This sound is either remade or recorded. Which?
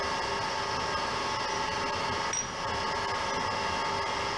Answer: recorded